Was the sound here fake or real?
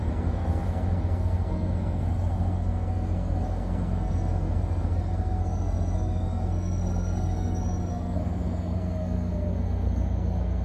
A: fake